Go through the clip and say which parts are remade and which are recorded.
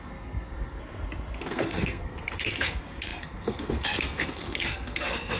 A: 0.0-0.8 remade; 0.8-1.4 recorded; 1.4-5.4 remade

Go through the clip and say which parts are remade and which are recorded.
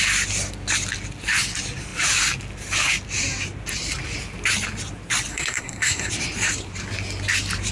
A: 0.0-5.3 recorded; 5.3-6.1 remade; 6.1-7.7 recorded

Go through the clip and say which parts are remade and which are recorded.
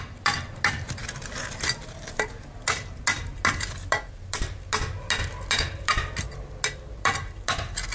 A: 0.0-7.9 recorded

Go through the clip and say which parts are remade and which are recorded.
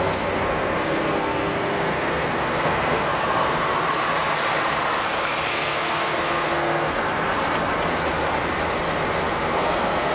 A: 0.0-3.7 remade; 3.7-5.5 recorded; 5.5-7.0 remade; 7.0-9.3 recorded; 9.3-10.1 remade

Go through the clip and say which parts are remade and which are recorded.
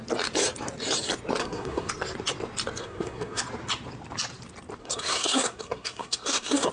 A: 0.0-1.4 recorded; 1.4-1.9 remade; 1.9-2.8 recorded; 2.8-3.4 remade; 3.4-4.8 recorded; 4.8-6.7 remade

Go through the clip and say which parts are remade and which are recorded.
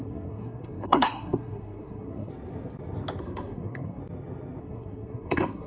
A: 0.0-2.3 remade; 2.3-3.2 recorded; 3.2-4.0 remade; 4.0-4.6 recorded; 4.6-5.7 remade